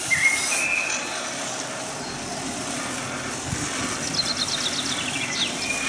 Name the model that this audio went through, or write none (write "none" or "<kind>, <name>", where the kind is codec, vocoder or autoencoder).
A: none